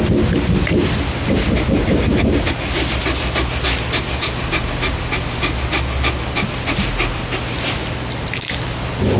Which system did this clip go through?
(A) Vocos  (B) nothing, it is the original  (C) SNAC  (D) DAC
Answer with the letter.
B